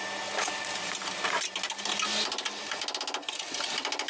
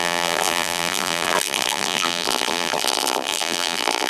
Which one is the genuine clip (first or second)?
first